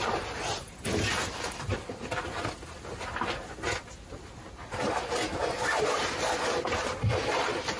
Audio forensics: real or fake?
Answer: real